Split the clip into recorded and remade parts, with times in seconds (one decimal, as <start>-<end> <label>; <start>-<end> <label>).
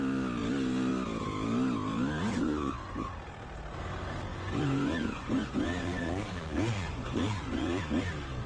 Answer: 0.0-2.4 recorded; 2.4-3.0 remade; 3.0-4.3 recorded; 4.3-7.8 remade; 7.8-8.5 recorded